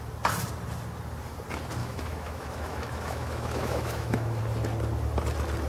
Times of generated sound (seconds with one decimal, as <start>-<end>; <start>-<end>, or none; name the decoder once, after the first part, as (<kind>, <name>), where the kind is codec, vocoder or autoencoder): 1.8-4.4 (autoencoder, DAC-VAE)